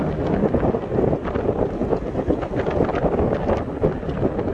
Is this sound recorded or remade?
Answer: recorded